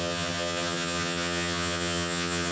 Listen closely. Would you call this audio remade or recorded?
remade